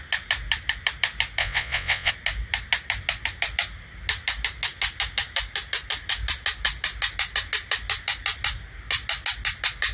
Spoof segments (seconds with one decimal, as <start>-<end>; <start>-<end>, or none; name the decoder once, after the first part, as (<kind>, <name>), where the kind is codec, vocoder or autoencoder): 1.4-2.1 (vocoder, WaveNeXt)